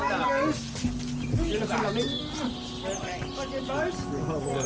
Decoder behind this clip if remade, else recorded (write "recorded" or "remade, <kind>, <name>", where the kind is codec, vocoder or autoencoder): recorded